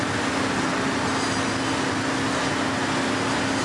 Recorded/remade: recorded